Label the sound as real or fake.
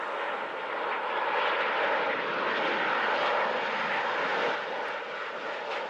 real